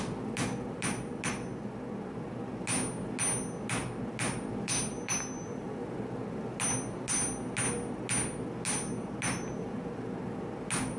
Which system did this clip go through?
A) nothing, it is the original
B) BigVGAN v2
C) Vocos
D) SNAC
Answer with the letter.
A